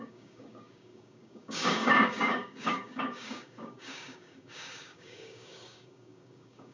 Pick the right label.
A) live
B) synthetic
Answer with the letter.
B